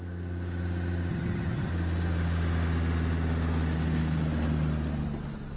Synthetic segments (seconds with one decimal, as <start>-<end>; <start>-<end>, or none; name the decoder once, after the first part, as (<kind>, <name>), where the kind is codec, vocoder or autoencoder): 1.1-1.7 (vocoder, HiFi-GAN)